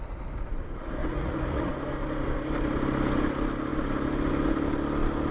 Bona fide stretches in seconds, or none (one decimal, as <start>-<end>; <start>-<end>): 0.0-1.0; 1.7-5.3